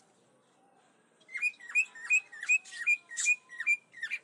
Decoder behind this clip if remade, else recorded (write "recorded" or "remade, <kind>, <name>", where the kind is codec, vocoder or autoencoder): recorded